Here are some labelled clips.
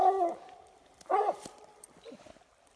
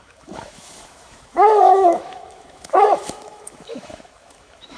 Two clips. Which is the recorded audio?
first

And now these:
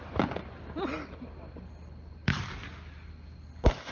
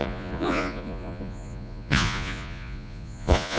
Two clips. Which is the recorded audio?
first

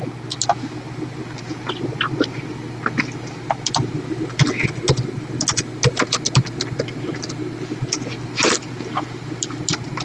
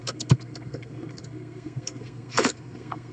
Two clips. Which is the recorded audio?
first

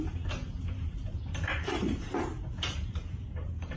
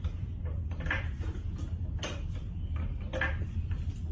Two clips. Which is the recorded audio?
second